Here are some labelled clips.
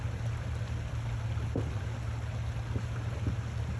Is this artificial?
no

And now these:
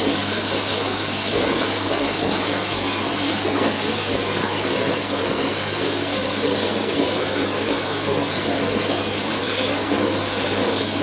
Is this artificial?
yes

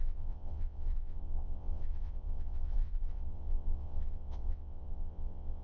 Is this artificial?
yes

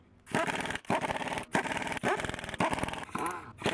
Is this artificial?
no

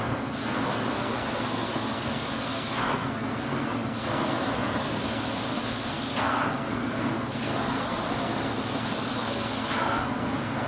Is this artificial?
yes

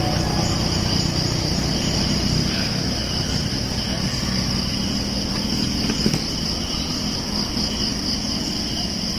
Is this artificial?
no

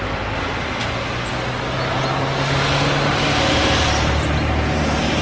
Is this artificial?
no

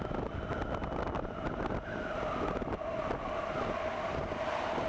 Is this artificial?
no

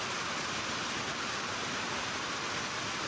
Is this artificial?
no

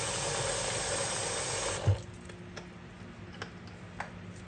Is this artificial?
no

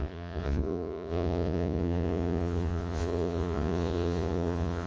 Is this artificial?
yes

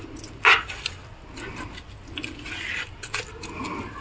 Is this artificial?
no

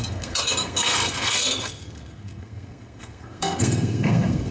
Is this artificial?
yes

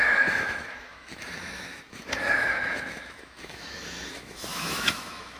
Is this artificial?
yes